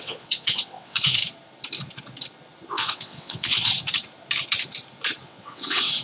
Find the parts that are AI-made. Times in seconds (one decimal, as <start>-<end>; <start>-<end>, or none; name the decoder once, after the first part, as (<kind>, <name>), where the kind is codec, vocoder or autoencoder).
0.0-1.2 (vocoder, WaveNeXt); 2.7-3.7; 5.2-6.0